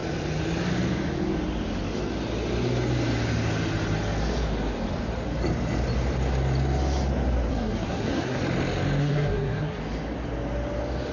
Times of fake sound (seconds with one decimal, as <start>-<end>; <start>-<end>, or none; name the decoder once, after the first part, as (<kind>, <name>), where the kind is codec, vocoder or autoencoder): 7.5-8.4 (codec, SNAC); 9.0-9.8